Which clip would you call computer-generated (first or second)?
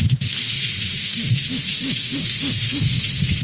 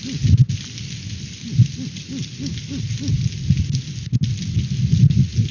first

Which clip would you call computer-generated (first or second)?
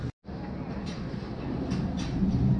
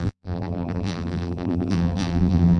second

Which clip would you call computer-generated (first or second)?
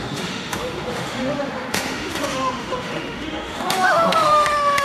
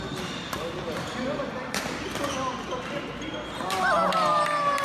first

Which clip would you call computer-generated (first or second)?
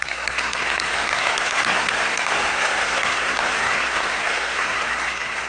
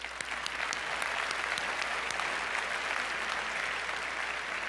first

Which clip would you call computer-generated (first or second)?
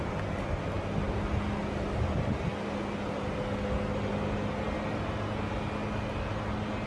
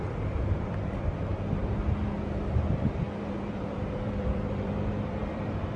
second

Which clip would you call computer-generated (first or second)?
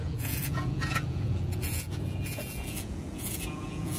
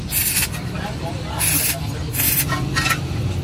first